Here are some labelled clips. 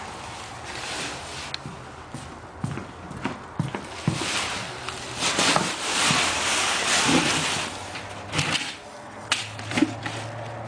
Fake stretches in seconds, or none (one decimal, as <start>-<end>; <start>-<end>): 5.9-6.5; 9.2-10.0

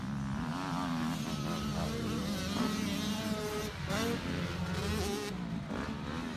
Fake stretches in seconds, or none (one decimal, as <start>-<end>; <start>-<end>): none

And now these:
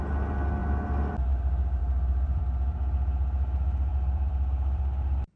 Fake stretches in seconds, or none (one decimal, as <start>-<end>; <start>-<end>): 1.8-2.4; 3.9-5.4

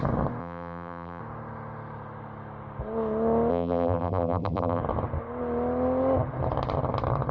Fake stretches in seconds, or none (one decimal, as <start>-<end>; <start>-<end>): 0.4-1.2; 3.5-4.8

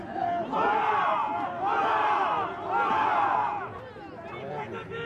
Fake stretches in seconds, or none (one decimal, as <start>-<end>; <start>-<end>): none